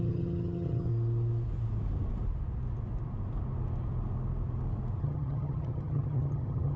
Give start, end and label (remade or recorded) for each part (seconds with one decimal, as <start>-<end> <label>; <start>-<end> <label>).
0.0-0.9 remade; 0.9-5.0 recorded; 5.0-6.8 remade